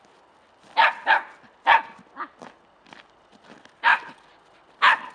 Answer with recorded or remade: recorded